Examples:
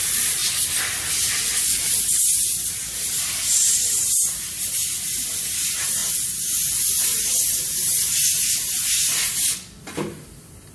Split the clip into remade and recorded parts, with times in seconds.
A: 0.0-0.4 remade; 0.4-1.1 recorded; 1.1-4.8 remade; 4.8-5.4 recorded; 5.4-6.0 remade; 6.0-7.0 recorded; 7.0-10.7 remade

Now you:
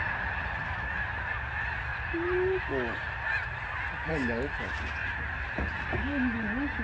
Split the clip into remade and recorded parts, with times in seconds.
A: 0.0-1.9 recorded; 1.9-2.6 remade; 2.6-5.0 recorded; 5.0-5.6 remade; 5.6-6.8 recorded

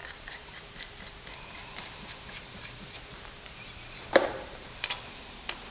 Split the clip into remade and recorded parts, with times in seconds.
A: 0.0-0.6 remade; 0.6-1.6 recorded; 1.6-5.0 remade; 5.0-5.7 recorded

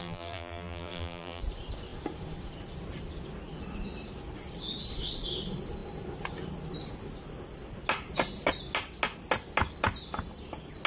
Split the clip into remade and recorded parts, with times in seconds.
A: 0.0-1.4 remade; 1.4-10.9 recorded

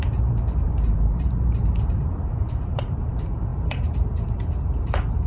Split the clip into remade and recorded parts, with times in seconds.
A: 0.0-5.3 remade

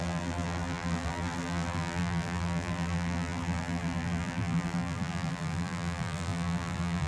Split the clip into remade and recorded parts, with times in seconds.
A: 0.0-7.1 remade

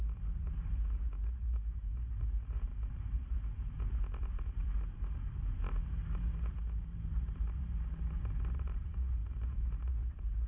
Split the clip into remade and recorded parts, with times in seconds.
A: 0.0-10.5 remade